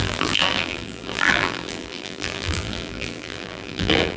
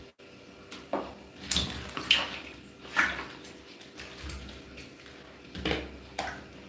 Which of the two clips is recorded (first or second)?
second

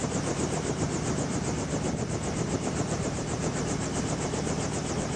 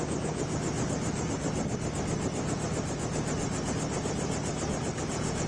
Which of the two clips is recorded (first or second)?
second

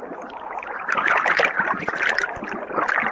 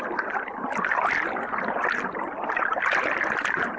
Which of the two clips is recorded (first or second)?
second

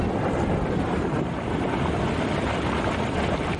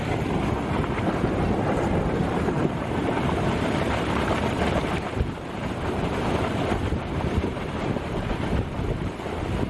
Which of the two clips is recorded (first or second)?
first